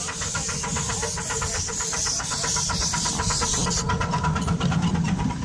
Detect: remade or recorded recorded